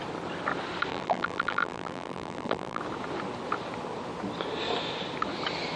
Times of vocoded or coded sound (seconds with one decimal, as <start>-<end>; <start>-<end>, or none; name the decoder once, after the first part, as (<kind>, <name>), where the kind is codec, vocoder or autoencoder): 0.9-2.8 (vocoder, BigVGAN v2)